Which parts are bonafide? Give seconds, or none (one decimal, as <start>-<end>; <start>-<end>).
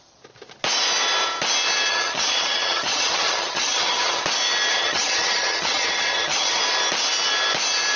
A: 0.0-1.9; 4.2-4.7; 6.6-8.0